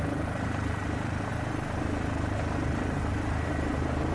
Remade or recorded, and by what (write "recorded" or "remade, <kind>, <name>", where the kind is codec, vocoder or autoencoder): remade, vocoder, BigVGAN v2